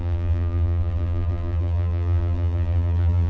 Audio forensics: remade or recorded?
remade